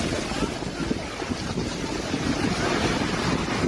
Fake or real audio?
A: real